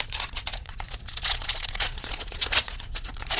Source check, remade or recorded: remade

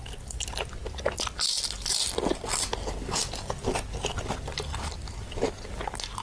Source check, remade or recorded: recorded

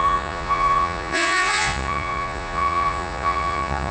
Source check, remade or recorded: remade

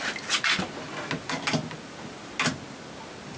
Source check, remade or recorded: recorded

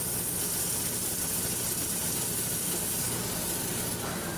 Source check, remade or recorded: recorded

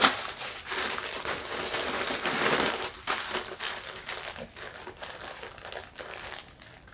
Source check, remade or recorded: recorded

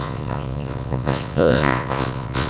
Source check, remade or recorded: remade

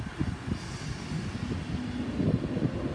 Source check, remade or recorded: recorded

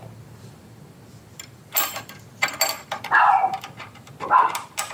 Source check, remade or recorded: recorded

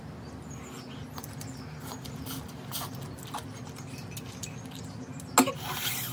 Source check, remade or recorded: recorded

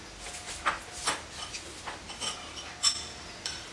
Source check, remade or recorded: recorded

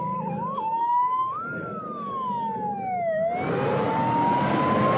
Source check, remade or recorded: recorded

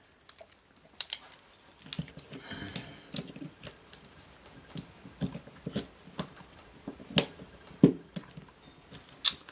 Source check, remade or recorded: recorded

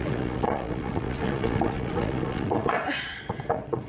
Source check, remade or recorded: remade